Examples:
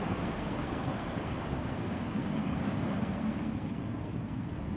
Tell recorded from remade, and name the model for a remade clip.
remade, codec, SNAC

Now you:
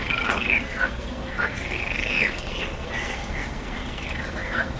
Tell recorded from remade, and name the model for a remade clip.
remade, codec, SNAC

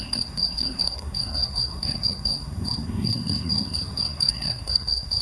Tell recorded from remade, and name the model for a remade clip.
remade, codec, SNAC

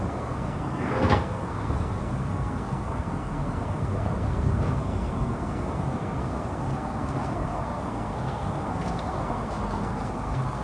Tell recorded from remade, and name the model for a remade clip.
remade, codec, SNAC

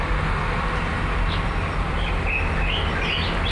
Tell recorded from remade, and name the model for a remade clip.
recorded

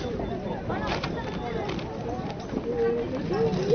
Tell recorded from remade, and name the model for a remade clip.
recorded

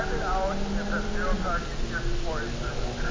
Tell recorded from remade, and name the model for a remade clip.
recorded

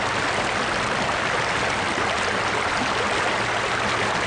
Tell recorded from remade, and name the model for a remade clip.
recorded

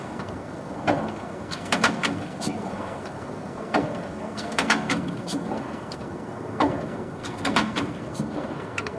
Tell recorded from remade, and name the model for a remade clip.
remade, codec, SNAC